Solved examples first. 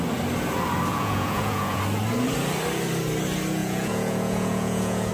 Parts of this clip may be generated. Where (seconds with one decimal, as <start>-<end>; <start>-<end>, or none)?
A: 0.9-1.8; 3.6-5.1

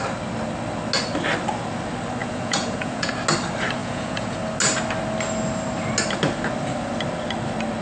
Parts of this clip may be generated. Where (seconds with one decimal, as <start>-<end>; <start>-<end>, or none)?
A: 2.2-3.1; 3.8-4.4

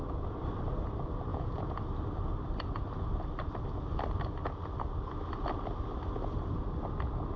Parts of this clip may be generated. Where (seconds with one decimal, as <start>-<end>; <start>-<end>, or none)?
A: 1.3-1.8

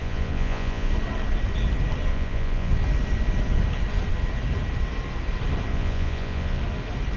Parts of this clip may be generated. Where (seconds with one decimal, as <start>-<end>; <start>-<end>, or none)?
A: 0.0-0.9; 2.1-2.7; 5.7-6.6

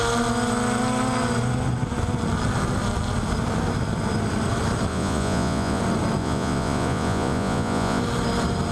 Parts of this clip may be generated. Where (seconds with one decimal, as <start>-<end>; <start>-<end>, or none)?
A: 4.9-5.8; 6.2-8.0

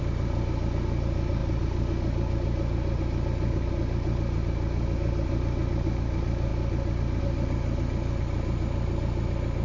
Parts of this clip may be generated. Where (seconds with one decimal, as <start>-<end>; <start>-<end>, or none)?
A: none

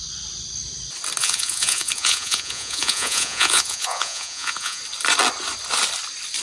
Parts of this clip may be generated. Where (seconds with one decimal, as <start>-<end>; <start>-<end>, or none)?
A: 1.2-4.8